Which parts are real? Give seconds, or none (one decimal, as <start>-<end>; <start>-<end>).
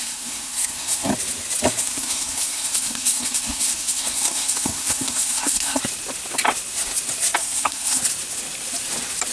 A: 1.1-1.8; 5.8-7.4; 8.0-9.3